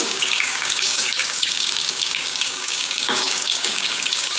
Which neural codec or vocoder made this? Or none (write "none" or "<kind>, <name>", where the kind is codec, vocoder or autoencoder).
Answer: codec, DAC